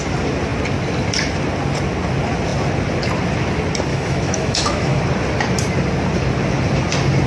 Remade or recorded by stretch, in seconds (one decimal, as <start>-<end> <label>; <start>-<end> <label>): 0.0-3.9 recorded; 3.9-5.0 remade; 5.0-7.3 recorded